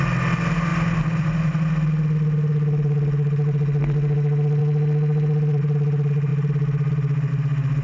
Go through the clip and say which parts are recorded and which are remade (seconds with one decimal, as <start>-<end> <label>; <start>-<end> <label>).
0.0-7.8 recorded